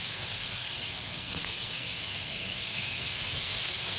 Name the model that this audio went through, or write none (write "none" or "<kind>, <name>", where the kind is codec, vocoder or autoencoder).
codec, SNAC